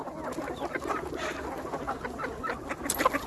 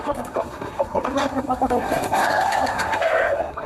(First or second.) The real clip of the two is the first